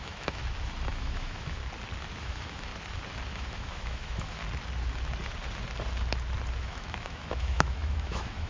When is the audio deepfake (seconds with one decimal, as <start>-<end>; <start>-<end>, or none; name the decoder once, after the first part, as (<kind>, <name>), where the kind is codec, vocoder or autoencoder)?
0.0-0.4 (autoencoder, DAC-VAE); 0.9-1.6; 2.2-2.7; 3.3-4.4; 6.6-8.5